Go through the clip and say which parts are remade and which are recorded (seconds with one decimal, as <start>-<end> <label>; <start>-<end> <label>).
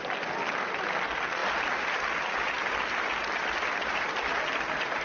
0.0-5.0 recorded